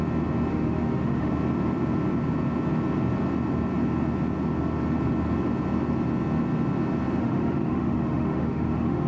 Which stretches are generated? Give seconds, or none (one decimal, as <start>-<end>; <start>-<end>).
0.5-1.3; 7.2-9.1

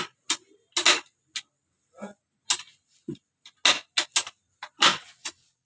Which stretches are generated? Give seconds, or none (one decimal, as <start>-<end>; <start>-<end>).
4.9-5.7

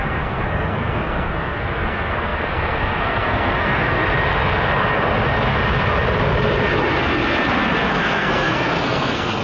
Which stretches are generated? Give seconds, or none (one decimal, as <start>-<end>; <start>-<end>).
0.0-4.0; 7.9-9.4

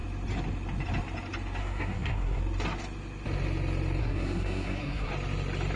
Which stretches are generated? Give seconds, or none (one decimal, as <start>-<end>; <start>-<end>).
1.6-2.4; 4.0-5.1

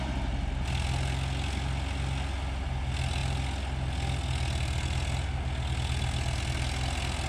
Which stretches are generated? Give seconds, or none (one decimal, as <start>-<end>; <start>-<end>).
none